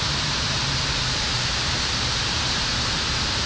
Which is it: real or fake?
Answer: fake